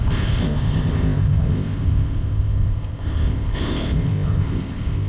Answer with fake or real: fake